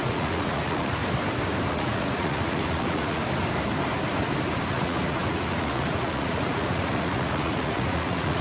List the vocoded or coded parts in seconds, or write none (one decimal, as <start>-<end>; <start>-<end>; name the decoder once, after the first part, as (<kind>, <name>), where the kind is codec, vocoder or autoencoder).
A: 0.0-1.0 (vocoder, Vocos); 1.7-3.2; 4.7-8.4